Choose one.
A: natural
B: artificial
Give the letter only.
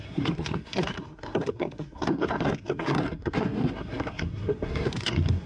B